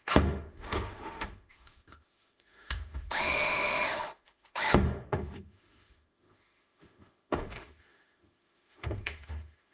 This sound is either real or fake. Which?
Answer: fake